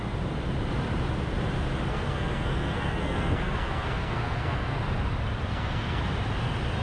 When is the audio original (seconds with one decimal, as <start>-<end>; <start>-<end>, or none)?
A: 0.0-1.9; 4.8-5.5; 6.0-6.8